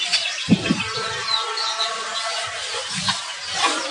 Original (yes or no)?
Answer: yes